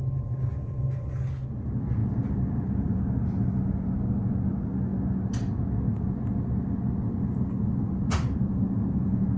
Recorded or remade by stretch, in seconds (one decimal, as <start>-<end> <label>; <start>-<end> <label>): 0.0-9.4 recorded